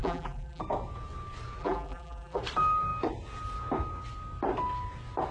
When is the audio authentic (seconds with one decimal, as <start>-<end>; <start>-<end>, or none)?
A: 0.6-1.6; 2.4-5.3

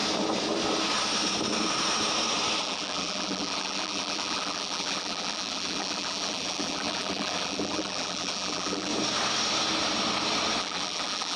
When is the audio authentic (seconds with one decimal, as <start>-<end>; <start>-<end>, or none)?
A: 0.0-2.6; 8.9-10.6

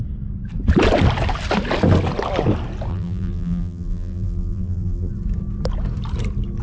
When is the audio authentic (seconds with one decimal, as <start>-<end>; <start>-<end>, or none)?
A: 0.0-2.9; 5.1-6.6

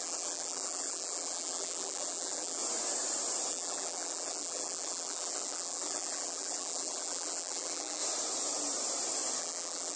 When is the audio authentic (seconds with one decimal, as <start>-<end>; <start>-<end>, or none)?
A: 2.6-3.5; 8.0-9.4

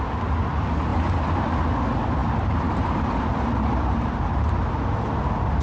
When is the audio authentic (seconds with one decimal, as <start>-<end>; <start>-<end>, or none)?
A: 0.0-0.9; 1.6-2.2; 4.5-5.6

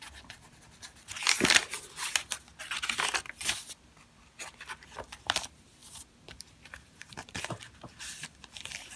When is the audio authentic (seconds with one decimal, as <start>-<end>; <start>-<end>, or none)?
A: 0.0-5.8; 7.4-9.0

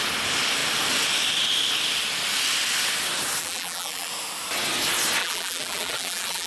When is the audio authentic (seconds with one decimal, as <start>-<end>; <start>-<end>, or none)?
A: 0.0-3.4; 4.1-5.2

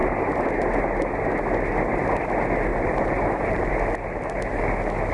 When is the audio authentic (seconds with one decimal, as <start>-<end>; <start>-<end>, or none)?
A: 0.0-2.7; 3.7-5.1